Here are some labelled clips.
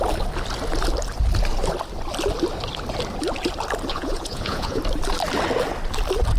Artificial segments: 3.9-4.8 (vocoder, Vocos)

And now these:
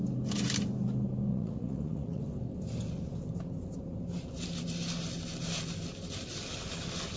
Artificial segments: 1.3-2.2 (vocoder, Vocos)

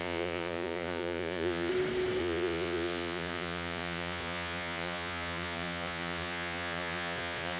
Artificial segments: 0.0-1.7 (vocoder, Vocos); 2.2-7.6

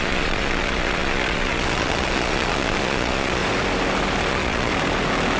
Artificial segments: 0.0-3.4 (vocoder, Vocos); 4.3-4.7

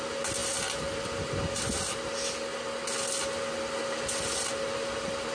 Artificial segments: none

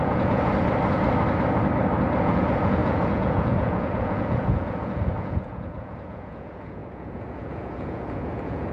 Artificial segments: 0.0-0.5 (vocoder, Vocos); 2.2-8.7

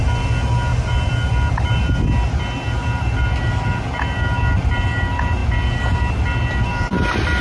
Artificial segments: none

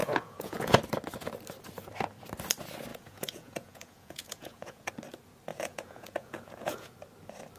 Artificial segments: 0.0-0.8 (vocoder, Vocos); 2.9-4.9; 5.5-6.9